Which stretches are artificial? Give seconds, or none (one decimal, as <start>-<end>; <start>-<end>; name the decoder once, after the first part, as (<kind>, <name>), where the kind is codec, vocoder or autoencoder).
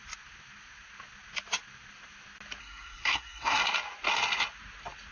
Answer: 2.6-3.6 (codec, SNAC)